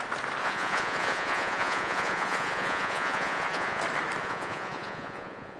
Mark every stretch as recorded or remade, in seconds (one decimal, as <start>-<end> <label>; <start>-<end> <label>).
0.0-0.4 recorded; 0.4-3.8 remade; 3.8-4.2 recorded; 4.2-5.6 remade